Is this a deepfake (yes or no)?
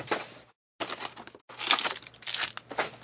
no